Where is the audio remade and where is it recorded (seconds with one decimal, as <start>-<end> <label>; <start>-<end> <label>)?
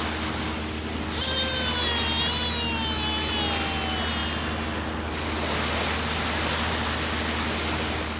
0.0-8.2 recorded